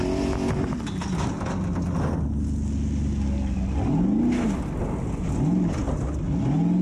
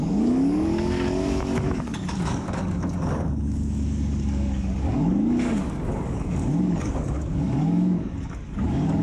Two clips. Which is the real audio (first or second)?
first